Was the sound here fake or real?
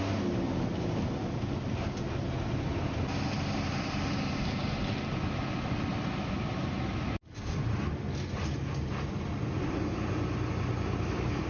real